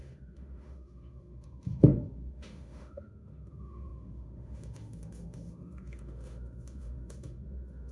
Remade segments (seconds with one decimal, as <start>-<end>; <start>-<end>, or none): 0.0-7.9